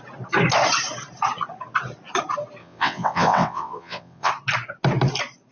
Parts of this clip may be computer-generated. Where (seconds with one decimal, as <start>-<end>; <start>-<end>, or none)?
2.6-4.3